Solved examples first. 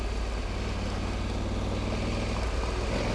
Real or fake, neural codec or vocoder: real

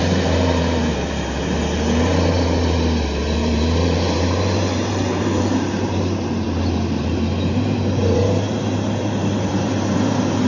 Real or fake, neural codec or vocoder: fake, vocoder, BigVGAN v2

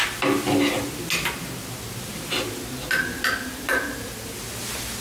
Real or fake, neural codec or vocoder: real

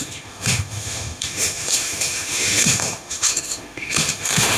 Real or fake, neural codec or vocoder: fake, autoencoder, DAC-VAE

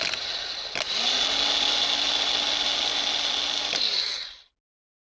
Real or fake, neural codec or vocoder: real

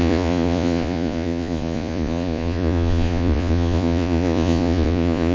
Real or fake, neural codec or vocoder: fake, vocoder, Vocos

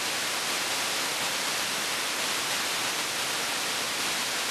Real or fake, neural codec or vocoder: real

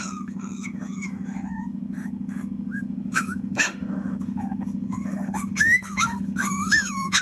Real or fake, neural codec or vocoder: fake, autoencoder, DAC-VAE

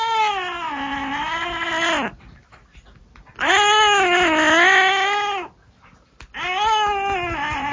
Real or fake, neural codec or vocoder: real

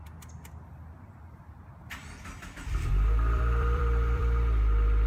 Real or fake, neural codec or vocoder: fake, vocoder, BigVGAN v2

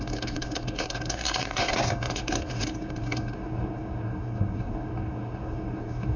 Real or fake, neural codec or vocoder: fake, codec, SNAC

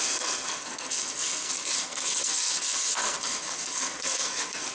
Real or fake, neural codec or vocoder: fake, codec, SNAC